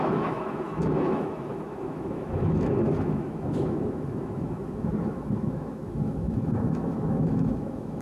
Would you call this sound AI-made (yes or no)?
yes